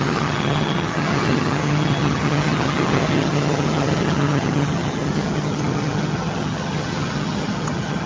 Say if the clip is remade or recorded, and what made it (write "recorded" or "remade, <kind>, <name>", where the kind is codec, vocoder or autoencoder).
remade, vocoder, HiFi-GAN